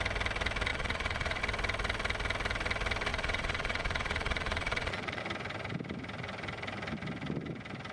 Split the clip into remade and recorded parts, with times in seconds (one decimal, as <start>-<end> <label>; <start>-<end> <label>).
0.0-0.7 recorded; 0.7-1.4 remade; 1.4-3.1 recorded; 3.1-5.2 remade; 5.2-7.9 recorded